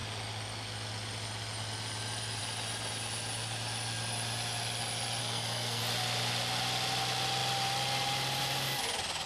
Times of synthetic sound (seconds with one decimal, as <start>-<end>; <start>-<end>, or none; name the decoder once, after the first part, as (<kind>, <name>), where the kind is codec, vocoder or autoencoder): 5.2-5.8 (codec, SNAC)